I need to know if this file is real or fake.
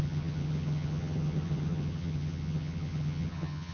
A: fake